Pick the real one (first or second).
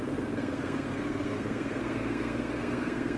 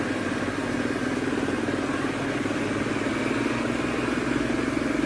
second